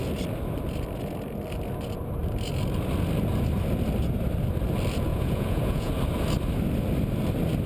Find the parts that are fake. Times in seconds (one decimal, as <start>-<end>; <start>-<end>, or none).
5.1-5.9